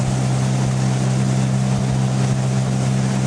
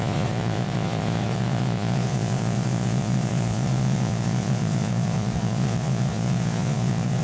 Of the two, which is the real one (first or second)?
first